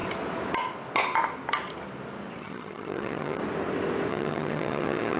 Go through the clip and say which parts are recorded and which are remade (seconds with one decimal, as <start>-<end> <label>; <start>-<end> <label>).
0.0-2.4 recorded; 2.4-3.4 remade; 3.4-4.1 recorded; 4.1-5.2 remade